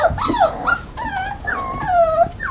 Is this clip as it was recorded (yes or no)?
yes